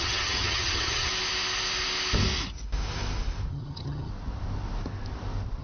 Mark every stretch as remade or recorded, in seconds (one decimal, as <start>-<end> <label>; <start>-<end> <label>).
0.0-1.1 remade; 1.1-3.5 recorded; 3.5-4.1 remade; 4.1-5.6 recorded